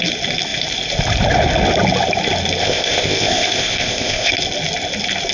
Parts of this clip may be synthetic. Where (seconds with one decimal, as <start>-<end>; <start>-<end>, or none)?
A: 2.6-4.3